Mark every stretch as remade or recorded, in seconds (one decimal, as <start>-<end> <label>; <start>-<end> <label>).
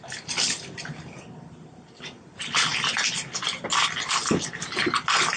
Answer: 0.0-5.4 recorded